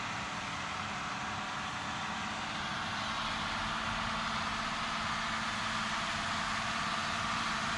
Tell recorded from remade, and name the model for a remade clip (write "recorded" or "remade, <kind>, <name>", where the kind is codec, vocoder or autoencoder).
recorded